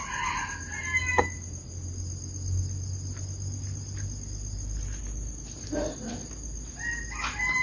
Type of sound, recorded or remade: recorded